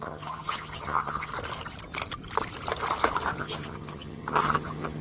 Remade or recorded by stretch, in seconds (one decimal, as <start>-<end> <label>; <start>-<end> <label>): 0.0-1.3 remade; 1.3-3.4 recorded; 3.4-5.0 remade